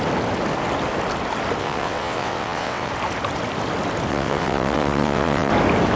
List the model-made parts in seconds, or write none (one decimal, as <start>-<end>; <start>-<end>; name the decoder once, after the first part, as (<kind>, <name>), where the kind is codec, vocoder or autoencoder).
1.6-2.9 (vocoder, WaveNeXt); 4.1-5.5